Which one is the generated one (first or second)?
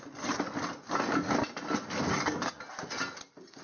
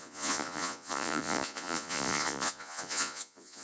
second